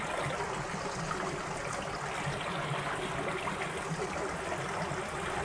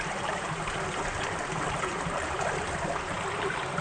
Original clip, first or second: first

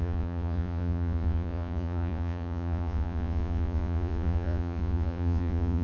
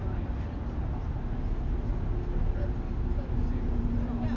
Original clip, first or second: second